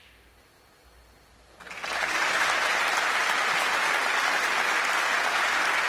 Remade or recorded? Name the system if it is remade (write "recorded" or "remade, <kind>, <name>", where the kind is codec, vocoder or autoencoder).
recorded